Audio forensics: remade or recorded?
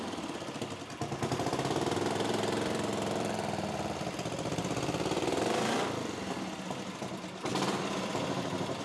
remade